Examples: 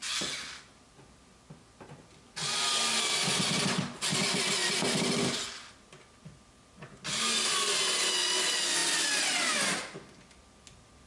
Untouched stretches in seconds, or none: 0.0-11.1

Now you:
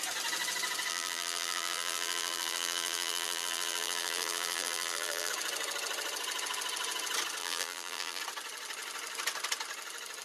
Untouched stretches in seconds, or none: 0.0-0.9; 5.3-7.4; 8.2-10.2

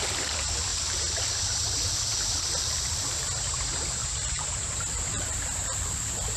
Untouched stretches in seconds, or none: 0.0-0.7; 1.4-4.0; 5.6-6.4

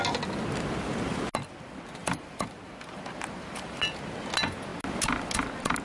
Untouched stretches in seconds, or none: 0.0-2.0; 3.8-5.8

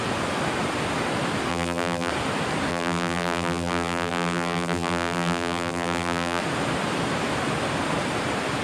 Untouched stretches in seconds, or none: 0.0-1.5; 2.1-2.7; 6.4-8.6

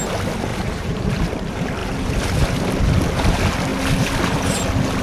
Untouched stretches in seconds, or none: 0.0-0.5; 1.1-5.0

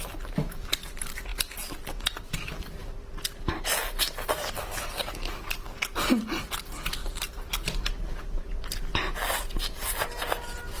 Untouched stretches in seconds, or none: 0.0-2.8; 4.9-7.0; 8.6-10.8